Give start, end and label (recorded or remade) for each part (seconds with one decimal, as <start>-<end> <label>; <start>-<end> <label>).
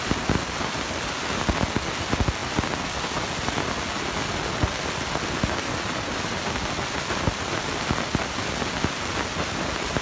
0.0-10.0 recorded